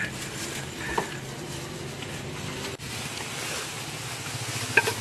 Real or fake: real